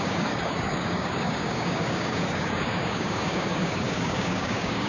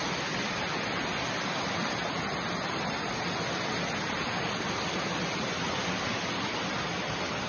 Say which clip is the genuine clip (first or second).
second